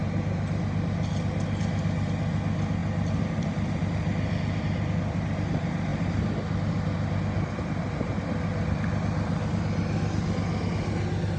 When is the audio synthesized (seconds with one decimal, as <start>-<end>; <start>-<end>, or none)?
none